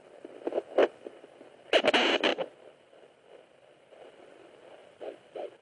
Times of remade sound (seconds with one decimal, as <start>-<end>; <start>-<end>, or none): 0.8-1.8; 2.3-4.0; 4.8-5.6